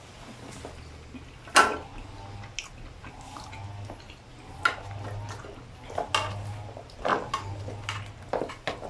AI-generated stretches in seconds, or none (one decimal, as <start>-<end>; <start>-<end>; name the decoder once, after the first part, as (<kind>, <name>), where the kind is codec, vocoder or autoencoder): none